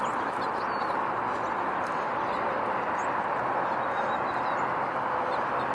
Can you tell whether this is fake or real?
real